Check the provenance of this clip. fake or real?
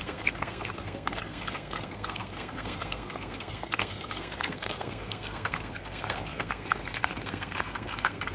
fake